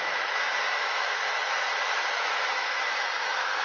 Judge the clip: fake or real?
fake